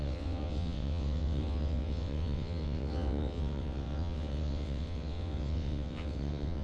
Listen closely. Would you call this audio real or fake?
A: fake